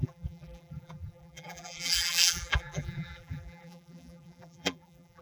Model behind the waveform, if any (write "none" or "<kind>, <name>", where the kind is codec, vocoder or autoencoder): vocoder, BigVGAN v2